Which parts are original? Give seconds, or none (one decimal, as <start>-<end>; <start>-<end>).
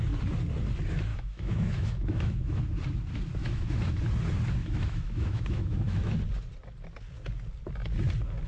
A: 0.0-1.1; 2.6-3.4; 4.0-4.6; 6.2-8.5